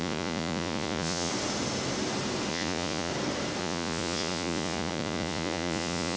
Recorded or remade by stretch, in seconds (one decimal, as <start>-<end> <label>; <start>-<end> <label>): 0.0-1.3 remade; 1.3-2.5 recorded; 2.5-3.1 remade; 3.1-3.6 recorded; 3.6-6.2 remade